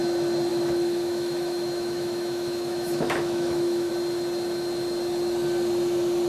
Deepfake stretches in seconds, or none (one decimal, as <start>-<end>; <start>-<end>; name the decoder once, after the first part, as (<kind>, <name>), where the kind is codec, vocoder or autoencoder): 0.5-3.9 (autoencoder, DAC-VAE)

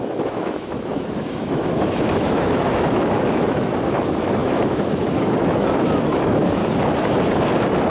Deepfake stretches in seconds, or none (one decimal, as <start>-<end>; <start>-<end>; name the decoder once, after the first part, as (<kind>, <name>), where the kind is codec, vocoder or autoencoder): 0.0-6.6 (autoencoder, DAC-VAE)